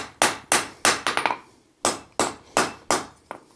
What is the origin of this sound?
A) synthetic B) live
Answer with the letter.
B